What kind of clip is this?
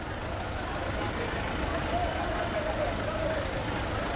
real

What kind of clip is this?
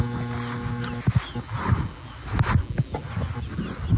real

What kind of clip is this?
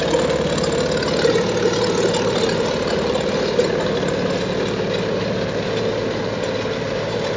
real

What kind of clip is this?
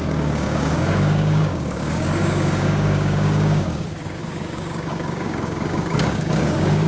fake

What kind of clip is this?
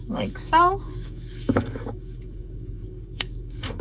fake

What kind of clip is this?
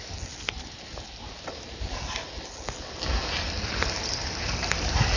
real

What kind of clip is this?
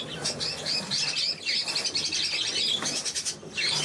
real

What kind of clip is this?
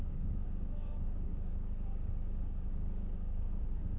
fake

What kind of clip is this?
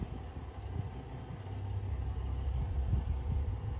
real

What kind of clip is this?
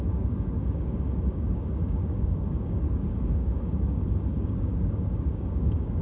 fake